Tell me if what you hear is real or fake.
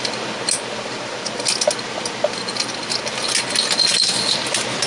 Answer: real